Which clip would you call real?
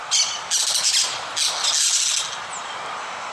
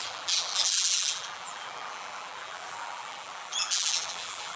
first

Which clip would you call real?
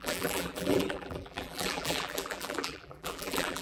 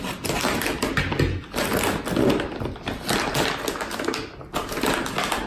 second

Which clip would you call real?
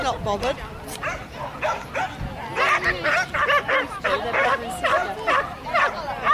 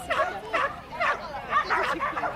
first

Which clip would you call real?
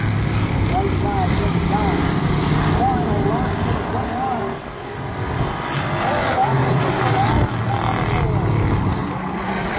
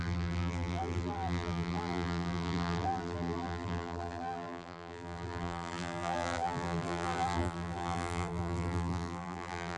first